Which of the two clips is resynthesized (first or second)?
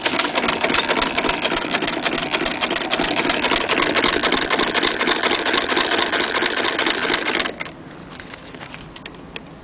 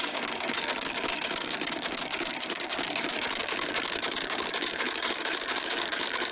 second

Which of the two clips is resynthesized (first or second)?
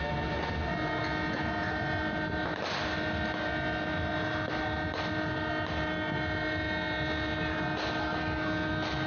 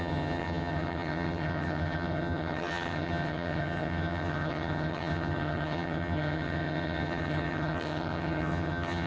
second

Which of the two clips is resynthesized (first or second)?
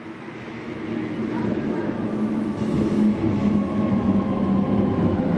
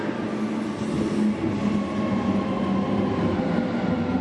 first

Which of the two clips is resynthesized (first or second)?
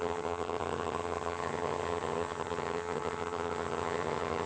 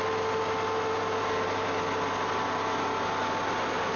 first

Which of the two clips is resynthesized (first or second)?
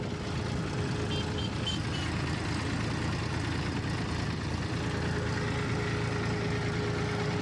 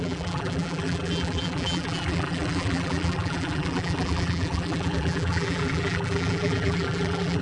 second